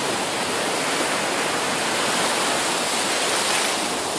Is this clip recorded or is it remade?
recorded